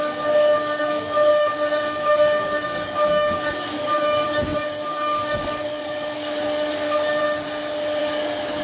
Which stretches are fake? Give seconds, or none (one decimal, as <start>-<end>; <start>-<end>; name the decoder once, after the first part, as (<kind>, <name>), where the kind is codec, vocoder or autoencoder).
0.0-7.2 (codec, DAC); 8.0-8.6